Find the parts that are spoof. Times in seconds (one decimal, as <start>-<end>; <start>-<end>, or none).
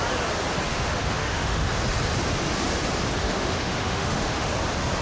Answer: 0.7-1.7; 3.2-4.5